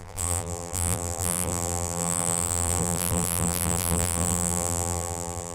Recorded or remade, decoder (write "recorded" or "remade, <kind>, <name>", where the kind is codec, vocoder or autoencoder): remade, vocoder, BigVGAN v2